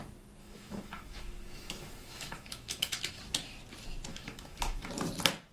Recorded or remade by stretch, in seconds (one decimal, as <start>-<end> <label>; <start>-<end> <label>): 0.0-0.4 recorded; 0.4-3.2 remade; 3.2-4.1 recorded; 4.1-4.9 remade; 4.9-5.5 recorded

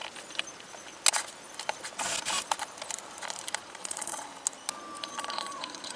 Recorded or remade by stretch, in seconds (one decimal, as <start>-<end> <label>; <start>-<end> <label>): 0.0-3.6 recorded; 3.6-4.3 remade; 4.3-5.1 recorded; 5.1-6.0 remade

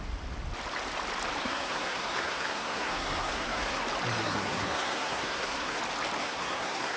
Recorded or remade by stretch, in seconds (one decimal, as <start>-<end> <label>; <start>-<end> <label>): 0.0-1.4 recorded; 1.4-3.8 remade; 3.8-4.2 recorded; 4.2-5.8 remade; 5.8-6.2 recorded; 6.2-7.0 remade

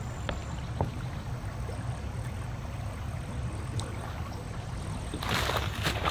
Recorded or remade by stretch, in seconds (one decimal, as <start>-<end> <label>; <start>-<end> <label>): 0.0-6.1 recorded

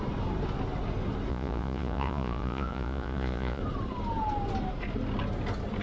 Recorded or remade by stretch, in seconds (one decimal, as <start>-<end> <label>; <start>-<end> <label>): 0.0-1.3 recorded; 1.3-3.6 remade; 3.6-5.8 recorded

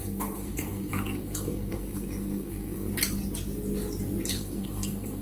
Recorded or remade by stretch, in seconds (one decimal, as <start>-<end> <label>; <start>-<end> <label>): 0.0-2.9 remade; 2.9-4.3 recorded; 4.3-5.2 remade

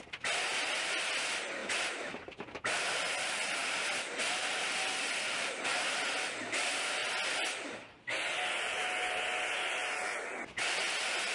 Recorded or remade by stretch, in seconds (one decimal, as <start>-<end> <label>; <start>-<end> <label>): 0.0-11.3 recorded

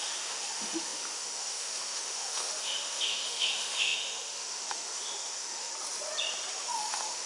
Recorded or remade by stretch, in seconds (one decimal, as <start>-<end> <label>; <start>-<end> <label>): 0.0-5.7 remade; 5.7-6.5 recorded; 6.5-7.3 remade